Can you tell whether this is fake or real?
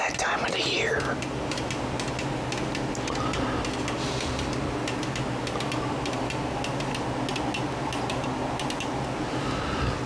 real